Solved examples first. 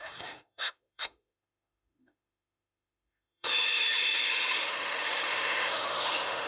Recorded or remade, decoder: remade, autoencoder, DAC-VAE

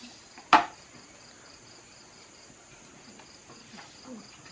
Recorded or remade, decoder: recorded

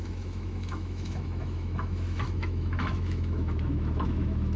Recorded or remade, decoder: remade, autoencoder, DAC-VAE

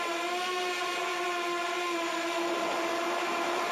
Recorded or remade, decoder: recorded